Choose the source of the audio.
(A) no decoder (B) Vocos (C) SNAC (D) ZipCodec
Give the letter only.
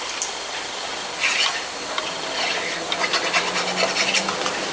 A